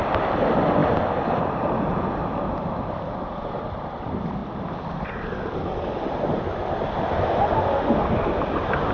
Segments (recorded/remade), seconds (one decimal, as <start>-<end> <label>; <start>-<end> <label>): 0.0-8.9 recorded